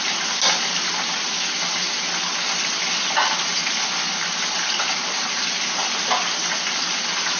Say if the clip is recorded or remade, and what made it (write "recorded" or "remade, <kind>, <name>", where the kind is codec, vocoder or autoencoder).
recorded